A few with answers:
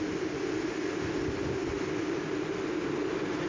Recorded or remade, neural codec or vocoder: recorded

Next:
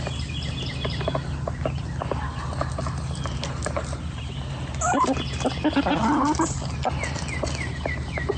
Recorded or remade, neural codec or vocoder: recorded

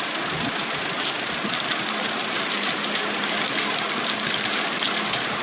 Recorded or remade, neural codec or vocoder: recorded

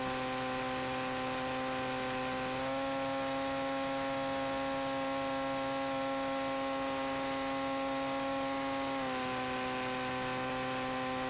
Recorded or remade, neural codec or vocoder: recorded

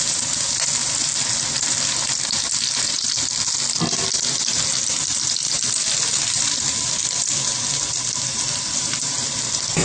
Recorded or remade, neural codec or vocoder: recorded